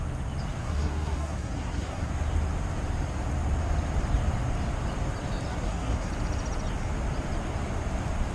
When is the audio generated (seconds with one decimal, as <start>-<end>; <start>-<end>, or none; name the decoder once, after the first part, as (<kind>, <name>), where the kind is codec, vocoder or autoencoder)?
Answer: 0.6-2.1 (codec, SNAC); 5.5-6.1